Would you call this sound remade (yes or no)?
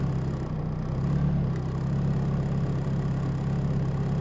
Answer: no